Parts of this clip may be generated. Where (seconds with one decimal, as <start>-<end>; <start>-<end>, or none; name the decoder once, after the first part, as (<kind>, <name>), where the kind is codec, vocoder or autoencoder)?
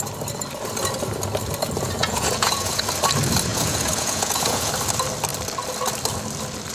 2.0-2.8 (vocoder, Vocos); 3.5-4.7